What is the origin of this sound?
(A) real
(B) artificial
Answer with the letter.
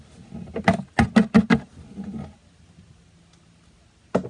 A